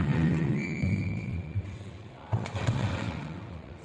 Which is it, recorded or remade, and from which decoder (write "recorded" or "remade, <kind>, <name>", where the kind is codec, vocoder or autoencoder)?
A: remade, vocoder, WaveNeXt